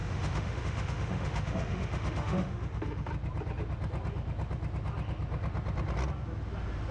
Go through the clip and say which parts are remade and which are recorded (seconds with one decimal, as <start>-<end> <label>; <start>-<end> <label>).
0.0-3.1 remade; 3.1-6.9 recorded